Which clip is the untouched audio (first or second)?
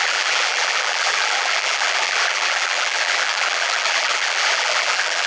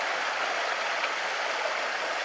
second